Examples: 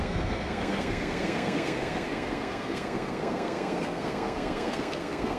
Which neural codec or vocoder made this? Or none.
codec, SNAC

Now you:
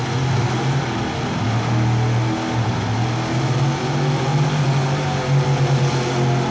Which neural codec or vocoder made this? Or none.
none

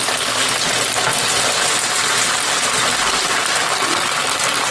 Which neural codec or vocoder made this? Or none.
none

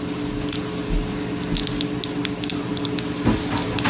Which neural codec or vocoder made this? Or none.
none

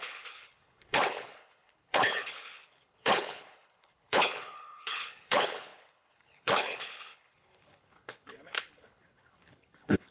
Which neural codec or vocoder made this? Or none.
codec, HILCodec